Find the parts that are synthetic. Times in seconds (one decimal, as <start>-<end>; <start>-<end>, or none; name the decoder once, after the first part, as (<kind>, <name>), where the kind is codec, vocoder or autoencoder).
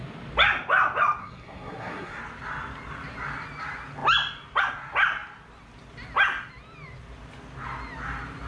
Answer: 1.2-2.2 (codec, SNAC)